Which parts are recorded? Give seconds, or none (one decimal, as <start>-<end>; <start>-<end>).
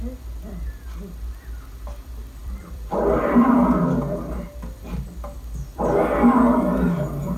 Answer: 0.0-2.4; 3.6-7.4